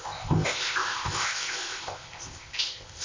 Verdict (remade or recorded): remade